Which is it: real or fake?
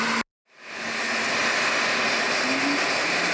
real